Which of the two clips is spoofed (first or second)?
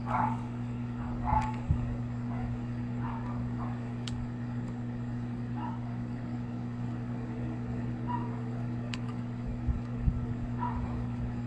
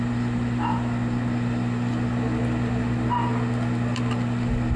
first